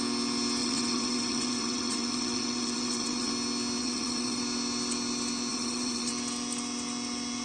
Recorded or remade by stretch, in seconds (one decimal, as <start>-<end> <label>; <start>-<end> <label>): 0.0-0.6 recorded; 0.6-3.3 remade; 3.3-3.8 recorded; 3.8-4.4 remade; 4.4-5.5 recorded; 5.5-6.1 remade; 6.1-7.4 recorded